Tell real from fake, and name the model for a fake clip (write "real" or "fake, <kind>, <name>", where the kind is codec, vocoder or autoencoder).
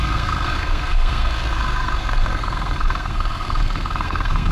fake, codec, SNAC